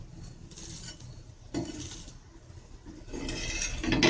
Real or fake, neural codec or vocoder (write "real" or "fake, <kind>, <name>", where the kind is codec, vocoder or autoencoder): real